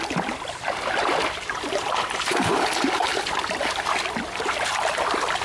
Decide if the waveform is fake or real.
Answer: fake